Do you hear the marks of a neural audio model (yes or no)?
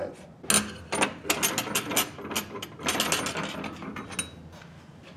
no